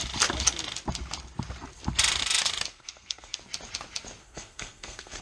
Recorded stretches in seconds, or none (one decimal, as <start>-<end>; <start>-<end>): 0.0-2.7; 3.4-4.2